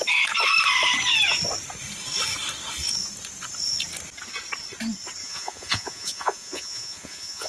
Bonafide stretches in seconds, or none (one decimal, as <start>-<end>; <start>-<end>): 0.0-5.2